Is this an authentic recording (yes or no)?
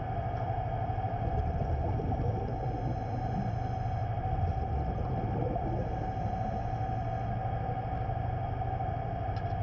yes